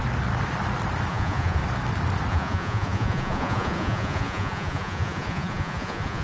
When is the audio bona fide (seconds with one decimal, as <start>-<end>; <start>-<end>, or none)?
0.0-1.1; 1.6-2.3